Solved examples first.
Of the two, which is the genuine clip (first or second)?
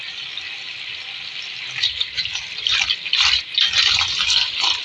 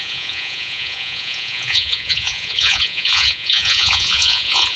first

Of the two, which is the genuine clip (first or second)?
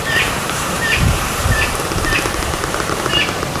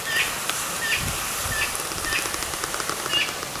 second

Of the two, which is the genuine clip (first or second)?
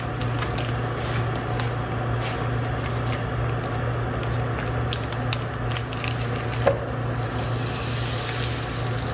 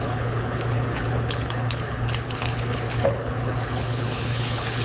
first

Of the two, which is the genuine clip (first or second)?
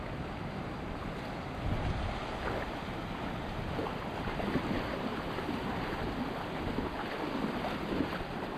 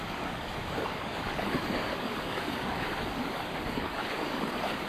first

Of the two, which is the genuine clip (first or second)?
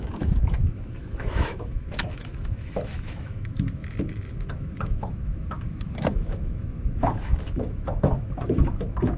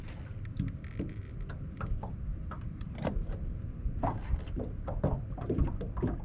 second